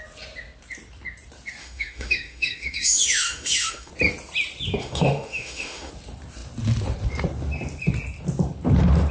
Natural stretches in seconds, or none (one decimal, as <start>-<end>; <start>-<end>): 0.0-1.6; 3.9-4.8; 5.9-9.1